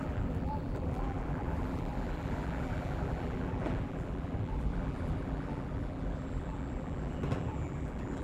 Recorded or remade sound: remade